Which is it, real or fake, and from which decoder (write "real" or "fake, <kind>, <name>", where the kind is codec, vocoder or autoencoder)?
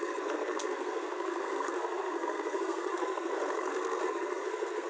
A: fake, codec, SNAC